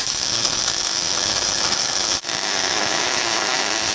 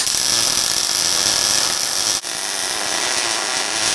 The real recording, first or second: second